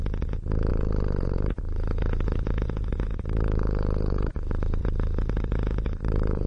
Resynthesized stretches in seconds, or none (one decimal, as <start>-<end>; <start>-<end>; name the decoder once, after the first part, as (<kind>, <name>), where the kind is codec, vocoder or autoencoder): 0.7-4.3 (vocoder, BigVGAN v2); 4.8-6.5